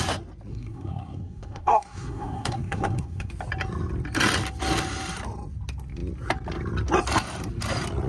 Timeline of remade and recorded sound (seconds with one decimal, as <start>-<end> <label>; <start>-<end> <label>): 0.0-0.5 recorded; 0.5-3.3 remade; 3.3-8.1 recorded